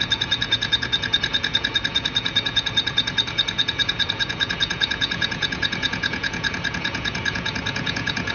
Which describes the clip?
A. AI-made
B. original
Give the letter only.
A